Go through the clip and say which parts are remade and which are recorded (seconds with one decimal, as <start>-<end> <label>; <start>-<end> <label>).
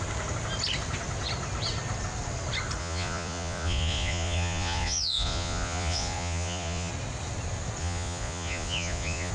0.0-2.8 recorded; 2.8-6.9 remade; 6.9-7.8 recorded; 7.8-9.3 remade